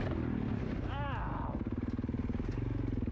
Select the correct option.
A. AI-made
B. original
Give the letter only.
B